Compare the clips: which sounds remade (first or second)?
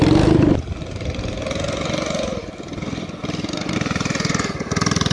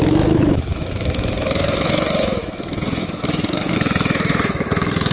second